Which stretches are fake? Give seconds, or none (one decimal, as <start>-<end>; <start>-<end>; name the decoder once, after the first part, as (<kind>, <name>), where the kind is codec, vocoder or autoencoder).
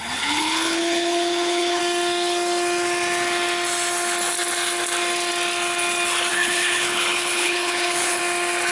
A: 0.0-1.8 (codec, HILCodec); 6.3-8.2